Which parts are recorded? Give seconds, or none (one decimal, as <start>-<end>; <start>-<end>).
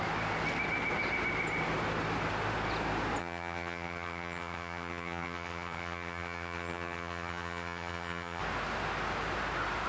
0.0-3.2; 8.4-9.9